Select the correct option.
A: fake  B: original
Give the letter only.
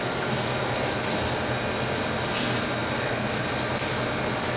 B